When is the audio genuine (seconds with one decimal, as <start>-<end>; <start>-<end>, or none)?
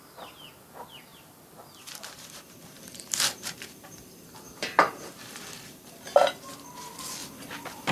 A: 0.0-1.1; 5.8-7.9